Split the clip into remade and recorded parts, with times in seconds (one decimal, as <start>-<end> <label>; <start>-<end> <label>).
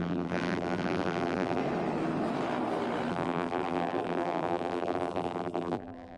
0.0-1.6 remade; 1.6-3.1 recorded; 3.1-6.2 remade